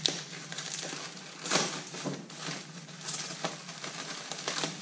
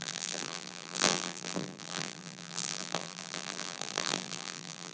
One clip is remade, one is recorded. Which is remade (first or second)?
second